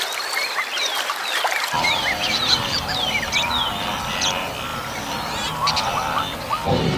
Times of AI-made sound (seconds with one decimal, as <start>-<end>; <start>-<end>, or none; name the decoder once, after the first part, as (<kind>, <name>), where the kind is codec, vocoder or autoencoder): 0.7-2.7 (vocoder, BigVGAN v2); 4.7-7.0